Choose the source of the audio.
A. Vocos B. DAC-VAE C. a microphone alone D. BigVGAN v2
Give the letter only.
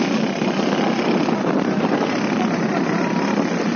C